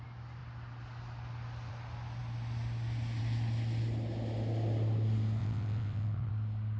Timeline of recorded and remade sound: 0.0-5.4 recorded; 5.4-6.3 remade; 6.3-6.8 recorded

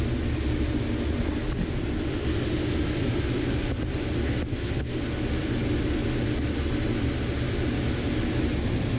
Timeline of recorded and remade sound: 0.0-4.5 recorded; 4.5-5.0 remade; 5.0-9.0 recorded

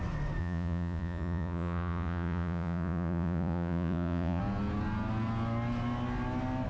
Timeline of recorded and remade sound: 0.0-0.4 recorded; 0.4-4.4 remade; 4.4-6.7 recorded

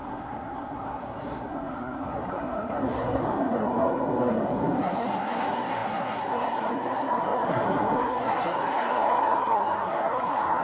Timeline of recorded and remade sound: 0.0-10.6 remade

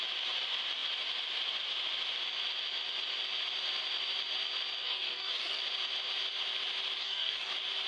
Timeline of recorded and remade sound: 0.0-4.8 recorded; 4.8-5.6 remade; 5.6-7.0 recorded; 7.0-7.5 remade; 7.5-7.9 recorded